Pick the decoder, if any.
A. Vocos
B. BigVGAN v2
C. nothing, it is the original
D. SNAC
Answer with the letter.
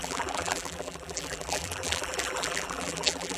B